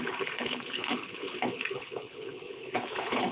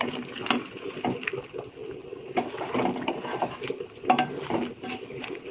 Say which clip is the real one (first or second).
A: second